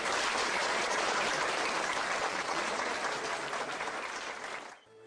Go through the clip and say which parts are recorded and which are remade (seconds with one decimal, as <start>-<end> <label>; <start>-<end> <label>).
0.0-0.4 recorded; 0.4-1.2 remade; 1.2-2.2 recorded; 2.2-2.9 remade; 2.9-5.1 recorded